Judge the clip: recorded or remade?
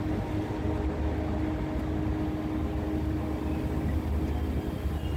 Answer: recorded